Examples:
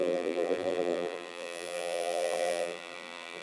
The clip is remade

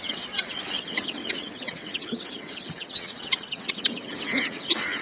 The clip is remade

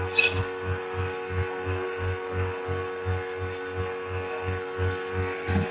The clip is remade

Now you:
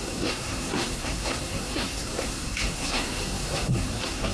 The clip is remade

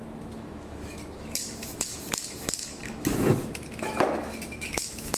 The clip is remade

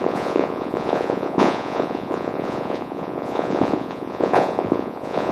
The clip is remade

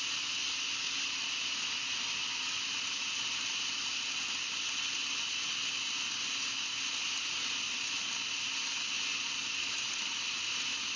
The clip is recorded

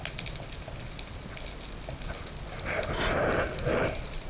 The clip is recorded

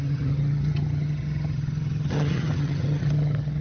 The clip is remade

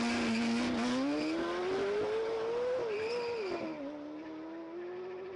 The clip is recorded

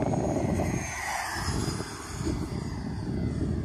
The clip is recorded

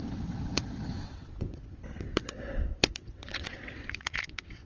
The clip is remade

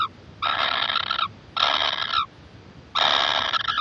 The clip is recorded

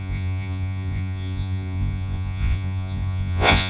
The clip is remade